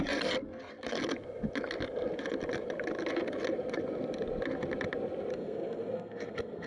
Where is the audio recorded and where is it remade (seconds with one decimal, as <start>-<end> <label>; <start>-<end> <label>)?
0.0-5.3 recorded; 5.3-6.7 remade

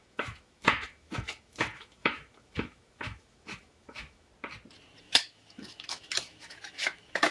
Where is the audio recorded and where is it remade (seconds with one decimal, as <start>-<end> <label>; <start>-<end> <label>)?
0.0-4.3 remade; 4.3-5.0 recorded; 5.0-7.3 remade

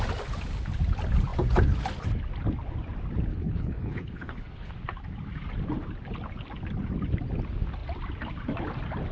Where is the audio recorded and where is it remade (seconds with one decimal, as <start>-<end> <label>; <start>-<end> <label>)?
0.0-3.3 recorded; 3.3-4.7 remade; 4.7-9.1 recorded

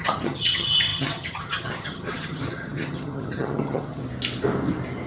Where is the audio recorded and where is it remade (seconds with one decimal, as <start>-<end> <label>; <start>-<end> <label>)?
0.0-4.0 remade; 4.0-5.1 recorded

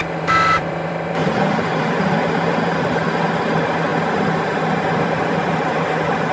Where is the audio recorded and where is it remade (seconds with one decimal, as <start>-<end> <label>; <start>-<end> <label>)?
0.0-3.9 remade; 3.9-5.0 recorded; 5.0-6.3 remade

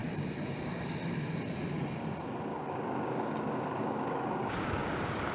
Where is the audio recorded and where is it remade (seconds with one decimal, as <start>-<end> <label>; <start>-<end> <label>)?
0.0-2.5 recorded; 2.5-5.3 remade